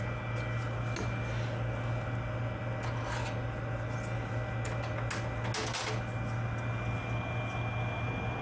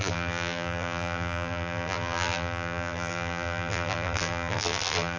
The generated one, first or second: second